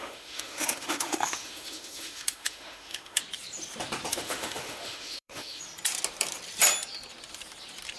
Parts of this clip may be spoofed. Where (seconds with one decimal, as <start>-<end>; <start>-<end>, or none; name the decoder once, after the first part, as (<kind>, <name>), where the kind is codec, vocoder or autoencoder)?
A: 0.0-3.2 (autoencoder, DAC-VAE); 4.1-5.6